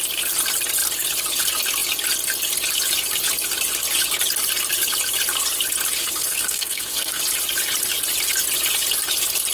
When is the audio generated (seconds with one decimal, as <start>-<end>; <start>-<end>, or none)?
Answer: 6.0-7.2